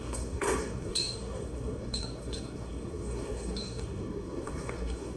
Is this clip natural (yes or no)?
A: no